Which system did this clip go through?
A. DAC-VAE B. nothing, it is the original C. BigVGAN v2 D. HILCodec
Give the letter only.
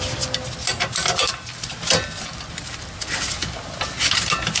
B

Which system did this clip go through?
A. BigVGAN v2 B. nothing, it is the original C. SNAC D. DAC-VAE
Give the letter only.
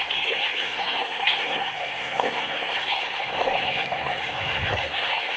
C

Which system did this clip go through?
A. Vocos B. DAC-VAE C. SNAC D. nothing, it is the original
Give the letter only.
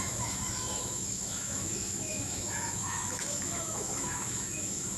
B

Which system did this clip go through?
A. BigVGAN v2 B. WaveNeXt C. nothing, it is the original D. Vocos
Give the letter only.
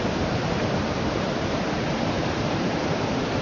A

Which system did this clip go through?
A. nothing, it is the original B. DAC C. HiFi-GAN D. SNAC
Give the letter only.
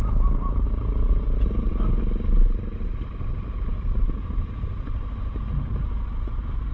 A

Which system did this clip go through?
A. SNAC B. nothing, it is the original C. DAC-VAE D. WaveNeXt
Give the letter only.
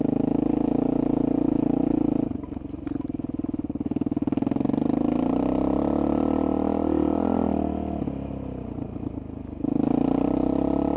B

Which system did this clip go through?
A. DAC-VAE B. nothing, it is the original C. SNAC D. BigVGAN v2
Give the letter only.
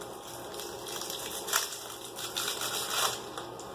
B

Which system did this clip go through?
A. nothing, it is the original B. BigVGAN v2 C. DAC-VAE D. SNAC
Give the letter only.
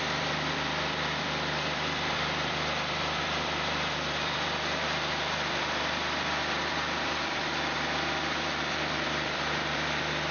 B